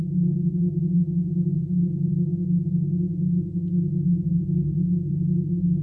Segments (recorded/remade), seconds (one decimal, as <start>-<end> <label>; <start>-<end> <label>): 0.0-5.8 recorded